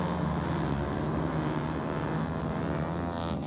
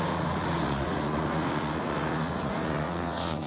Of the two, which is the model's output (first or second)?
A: second